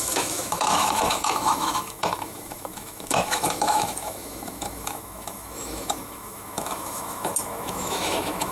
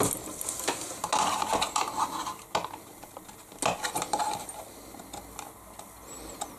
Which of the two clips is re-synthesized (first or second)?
first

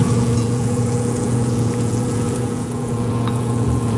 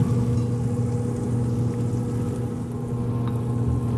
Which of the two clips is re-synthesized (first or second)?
first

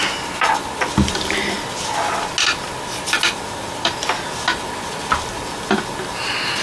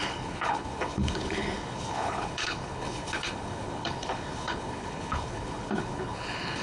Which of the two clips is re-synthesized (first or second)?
second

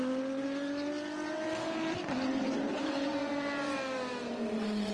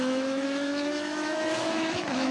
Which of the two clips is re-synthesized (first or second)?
second